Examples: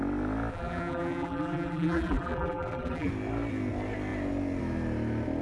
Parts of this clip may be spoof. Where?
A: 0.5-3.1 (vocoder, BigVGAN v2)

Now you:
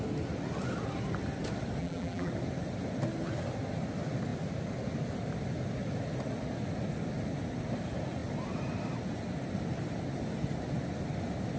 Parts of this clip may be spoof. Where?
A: 1.8-2.3 (vocoder, BigVGAN v2)

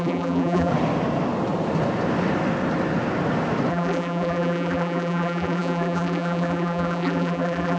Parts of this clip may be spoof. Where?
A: 0.0-0.7 (vocoder, BigVGAN v2); 3.7-7.8

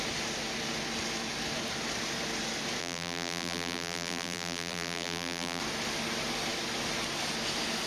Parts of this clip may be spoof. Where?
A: 2.8-5.6 (vocoder, BigVGAN v2)

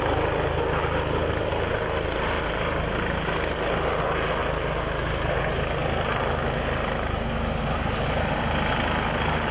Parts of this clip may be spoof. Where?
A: none

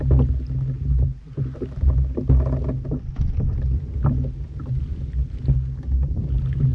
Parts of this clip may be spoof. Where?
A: 4.7-5.4 (vocoder, BigVGAN v2)

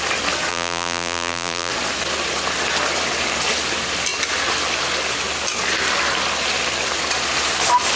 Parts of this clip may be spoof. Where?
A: 0.5-1.7 (vocoder, BigVGAN v2)